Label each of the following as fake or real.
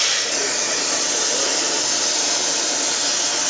real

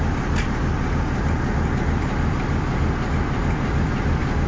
real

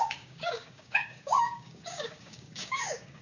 fake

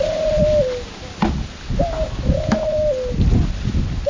real